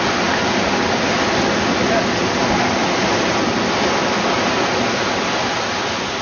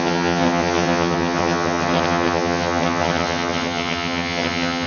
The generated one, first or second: second